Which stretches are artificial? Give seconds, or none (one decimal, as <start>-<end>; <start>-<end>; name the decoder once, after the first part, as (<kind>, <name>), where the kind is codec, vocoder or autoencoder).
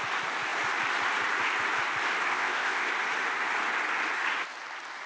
2.3-2.9 (codec, ZipCodec)